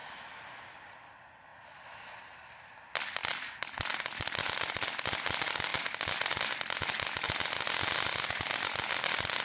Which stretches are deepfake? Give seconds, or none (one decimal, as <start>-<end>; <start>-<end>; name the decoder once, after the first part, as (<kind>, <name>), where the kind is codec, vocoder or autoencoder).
none